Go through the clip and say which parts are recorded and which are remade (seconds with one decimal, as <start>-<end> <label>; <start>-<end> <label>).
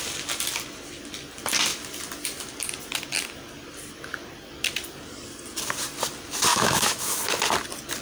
0.0-6.5 recorded; 6.5-7.2 remade; 7.2-8.0 recorded